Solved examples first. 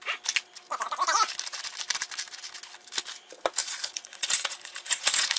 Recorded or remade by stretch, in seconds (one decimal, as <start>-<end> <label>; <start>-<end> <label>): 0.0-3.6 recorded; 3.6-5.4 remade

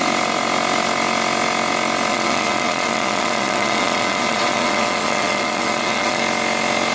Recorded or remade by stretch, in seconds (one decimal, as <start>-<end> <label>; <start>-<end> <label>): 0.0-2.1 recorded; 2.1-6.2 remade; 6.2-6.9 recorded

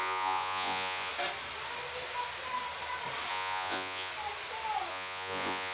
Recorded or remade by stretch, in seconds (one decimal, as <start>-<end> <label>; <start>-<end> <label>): 0.0-1.1 remade; 1.1-3.3 recorded; 3.3-4.1 remade; 4.1-4.9 recorded; 4.9-5.7 remade

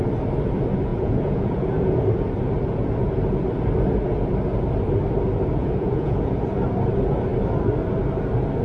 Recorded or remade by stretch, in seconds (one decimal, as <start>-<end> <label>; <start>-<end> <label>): 0.0-0.9 recorded; 0.9-2.0 remade; 2.0-5.6 recorded; 5.6-6.4 remade; 6.4-8.6 recorded